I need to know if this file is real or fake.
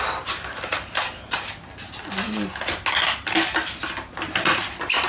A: real